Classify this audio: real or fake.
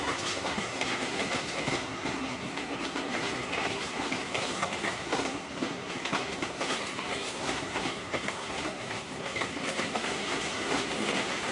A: fake